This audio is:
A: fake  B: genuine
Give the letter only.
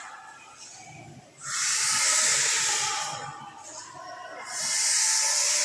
B